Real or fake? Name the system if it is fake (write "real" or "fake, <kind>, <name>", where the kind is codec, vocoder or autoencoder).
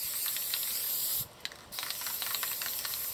real